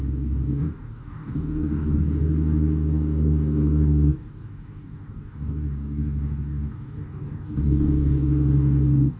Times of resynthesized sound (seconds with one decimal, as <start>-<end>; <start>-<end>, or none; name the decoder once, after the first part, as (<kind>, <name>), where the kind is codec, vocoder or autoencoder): 0.0-9.2 (codec, DAC)